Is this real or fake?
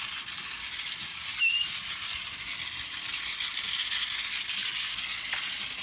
real